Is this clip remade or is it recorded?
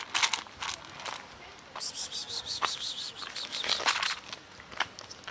recorded